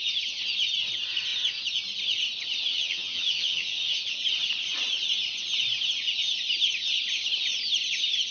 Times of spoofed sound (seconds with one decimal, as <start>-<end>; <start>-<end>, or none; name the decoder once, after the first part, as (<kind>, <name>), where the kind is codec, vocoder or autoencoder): 2.7-4.0 (vocoder, HiFi-GAN)